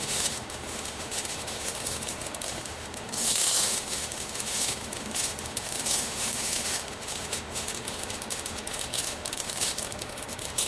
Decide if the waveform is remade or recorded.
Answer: remade